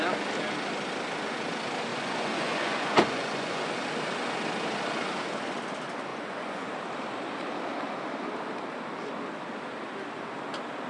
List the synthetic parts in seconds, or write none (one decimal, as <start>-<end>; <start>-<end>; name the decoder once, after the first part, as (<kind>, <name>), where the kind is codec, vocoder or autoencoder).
1.9-3.7 (vocoder, Vocos); 6.1-6.7